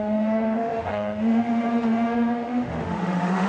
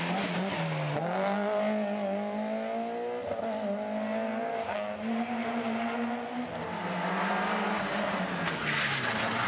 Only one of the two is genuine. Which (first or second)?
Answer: second